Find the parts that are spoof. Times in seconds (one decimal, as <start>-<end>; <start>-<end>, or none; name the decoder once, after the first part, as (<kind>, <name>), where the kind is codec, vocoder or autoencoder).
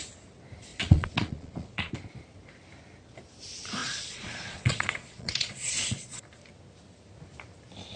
0.7-1.9 (vocoder, Vocos); 3.8-6.2